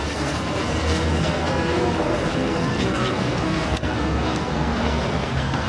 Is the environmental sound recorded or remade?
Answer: remade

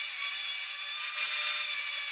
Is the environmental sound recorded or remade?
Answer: recorded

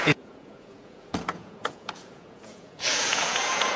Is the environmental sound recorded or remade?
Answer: remade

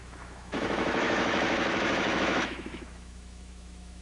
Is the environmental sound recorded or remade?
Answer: remade